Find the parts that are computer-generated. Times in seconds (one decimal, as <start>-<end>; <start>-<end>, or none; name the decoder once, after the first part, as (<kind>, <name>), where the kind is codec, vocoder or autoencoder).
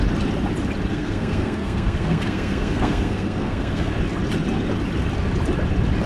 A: 0.9-3.9 (codec, SNAC)